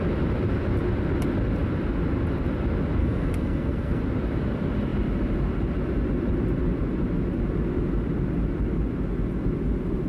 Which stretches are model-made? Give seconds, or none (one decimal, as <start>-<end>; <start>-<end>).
3.0-4.0